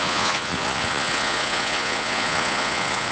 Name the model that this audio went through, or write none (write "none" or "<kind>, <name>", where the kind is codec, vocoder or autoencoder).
vocoder, Vocos